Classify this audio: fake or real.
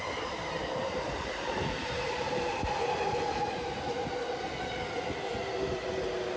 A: real